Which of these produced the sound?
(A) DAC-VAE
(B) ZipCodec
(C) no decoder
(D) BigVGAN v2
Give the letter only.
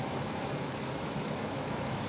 A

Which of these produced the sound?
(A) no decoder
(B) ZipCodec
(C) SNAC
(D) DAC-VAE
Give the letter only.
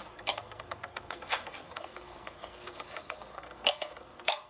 C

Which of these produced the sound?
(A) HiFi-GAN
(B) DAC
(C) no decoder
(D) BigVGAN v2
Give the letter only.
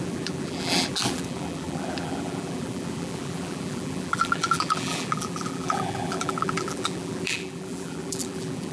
D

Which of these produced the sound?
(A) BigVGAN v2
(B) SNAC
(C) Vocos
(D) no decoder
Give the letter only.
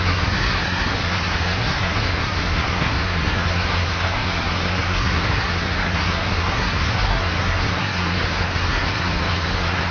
B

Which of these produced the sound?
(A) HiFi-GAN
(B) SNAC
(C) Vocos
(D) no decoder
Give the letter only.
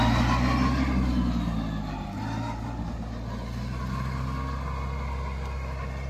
D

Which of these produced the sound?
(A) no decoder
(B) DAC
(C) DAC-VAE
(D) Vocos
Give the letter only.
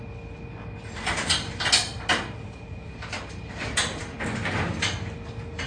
A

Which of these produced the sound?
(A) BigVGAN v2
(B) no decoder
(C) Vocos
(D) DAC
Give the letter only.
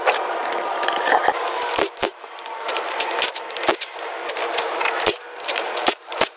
A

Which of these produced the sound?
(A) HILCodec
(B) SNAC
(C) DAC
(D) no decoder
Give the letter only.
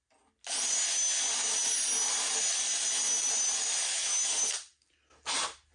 D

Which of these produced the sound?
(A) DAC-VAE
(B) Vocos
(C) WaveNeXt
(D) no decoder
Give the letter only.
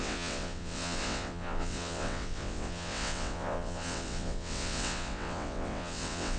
C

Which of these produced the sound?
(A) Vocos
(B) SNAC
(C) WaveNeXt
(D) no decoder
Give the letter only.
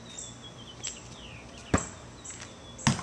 D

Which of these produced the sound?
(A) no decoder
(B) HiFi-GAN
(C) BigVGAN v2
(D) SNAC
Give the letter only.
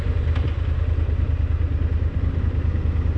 A